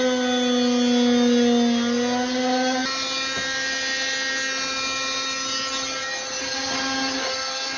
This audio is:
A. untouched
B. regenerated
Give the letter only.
A